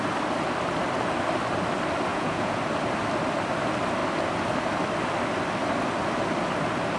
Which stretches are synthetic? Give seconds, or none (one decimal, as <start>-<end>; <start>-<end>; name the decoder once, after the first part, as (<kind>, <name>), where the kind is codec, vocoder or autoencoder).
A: 2.1-2.6 (vocoder, Vocos)